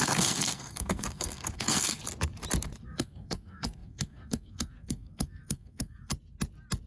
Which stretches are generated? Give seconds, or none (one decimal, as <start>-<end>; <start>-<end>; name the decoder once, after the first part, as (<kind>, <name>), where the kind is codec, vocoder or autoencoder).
0.0-2.0 (codec, SNAC); 2.8-6.1